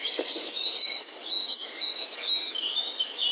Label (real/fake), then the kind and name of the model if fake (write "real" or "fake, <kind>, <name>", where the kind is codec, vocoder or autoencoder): fake, codec, DAC